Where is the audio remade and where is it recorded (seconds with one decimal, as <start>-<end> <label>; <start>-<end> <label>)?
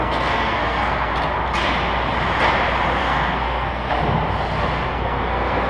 0.0-1.1 remade; 1.1-3.0 recorded; 3.0-3.9 remade; 3.9-4.9 recorded; 4.9-5.7 remade